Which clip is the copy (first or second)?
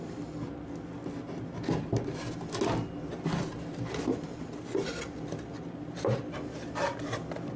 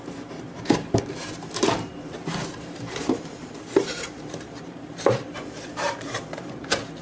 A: second